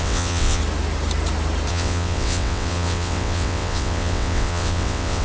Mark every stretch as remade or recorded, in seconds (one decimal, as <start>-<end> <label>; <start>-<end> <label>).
0.0-0.6 remade; 0.6-1.7 recorded; 1.7-5.2 remade